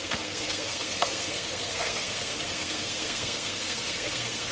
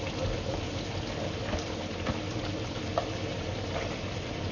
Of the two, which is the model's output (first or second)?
first